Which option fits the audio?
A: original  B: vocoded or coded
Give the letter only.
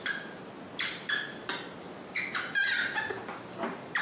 A